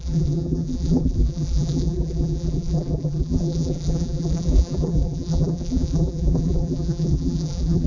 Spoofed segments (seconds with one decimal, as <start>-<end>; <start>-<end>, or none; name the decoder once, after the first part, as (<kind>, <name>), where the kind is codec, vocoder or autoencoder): 0.0-7.9 (vocoder, BigVGAN v2)